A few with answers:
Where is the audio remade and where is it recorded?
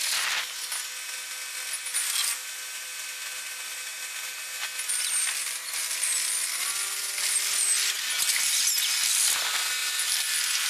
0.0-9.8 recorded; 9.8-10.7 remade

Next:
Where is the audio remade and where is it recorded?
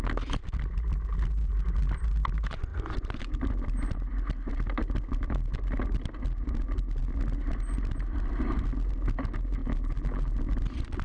0.0-9.6 recorded; 9.6-10.3 remade; 10.3-11.0 recorded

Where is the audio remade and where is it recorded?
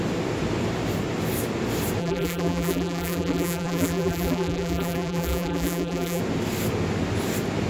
0.0-2.0 recorded; 2.0-6.2 remade; 6.2-7.7 recorded